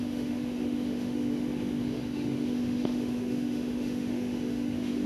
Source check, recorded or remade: remade